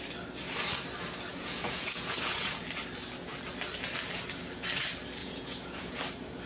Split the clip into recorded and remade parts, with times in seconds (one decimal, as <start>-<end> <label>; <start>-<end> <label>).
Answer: 0.0-1.3 recorded; 1.3-2.6 remade; 2.6-5.2 recorded; 5.2-6.0 remade; 6.0-6.5 recorded